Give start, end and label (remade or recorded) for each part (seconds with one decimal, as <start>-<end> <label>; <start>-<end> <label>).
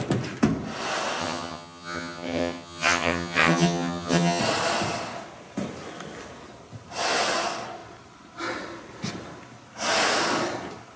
0.0-1.2 recorded; 1.2-4.4 remade; 4.4-11.0 recorded